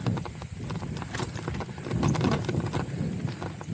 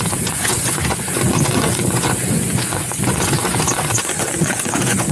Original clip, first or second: first